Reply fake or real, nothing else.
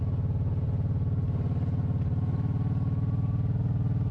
real